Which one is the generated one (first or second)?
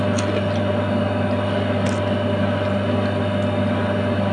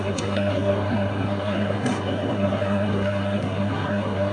second